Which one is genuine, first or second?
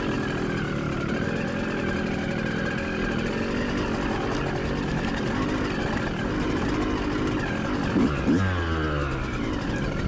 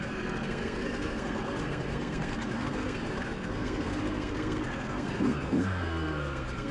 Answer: first